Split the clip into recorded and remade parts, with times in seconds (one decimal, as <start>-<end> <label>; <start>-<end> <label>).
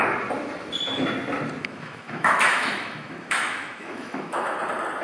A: 0.0-1.6 recorded; 1.6-4.6 remade; 4.6-5.0 recorded